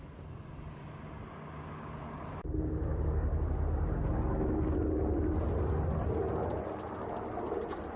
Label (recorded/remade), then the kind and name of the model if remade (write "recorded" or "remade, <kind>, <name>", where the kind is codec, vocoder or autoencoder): recorded